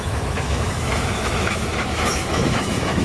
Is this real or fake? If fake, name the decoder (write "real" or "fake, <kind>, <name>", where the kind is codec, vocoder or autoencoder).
fake, autoencoder, DAC-VAE